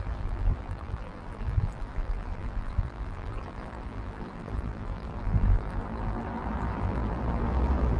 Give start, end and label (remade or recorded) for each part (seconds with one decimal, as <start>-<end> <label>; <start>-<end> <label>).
0.0-8.0 remade